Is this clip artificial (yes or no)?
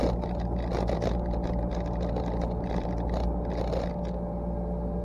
no